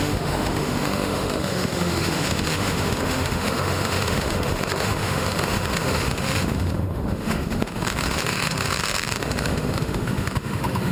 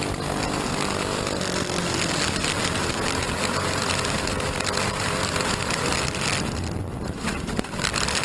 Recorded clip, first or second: second